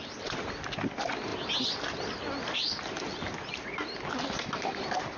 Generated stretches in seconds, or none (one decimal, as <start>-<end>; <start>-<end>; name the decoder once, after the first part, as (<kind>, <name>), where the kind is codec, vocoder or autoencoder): none